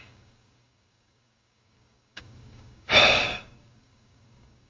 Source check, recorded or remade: remade